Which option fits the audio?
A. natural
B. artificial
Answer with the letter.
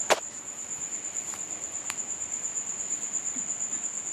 A